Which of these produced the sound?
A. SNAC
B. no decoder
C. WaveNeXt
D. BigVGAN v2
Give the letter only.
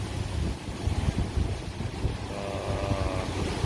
B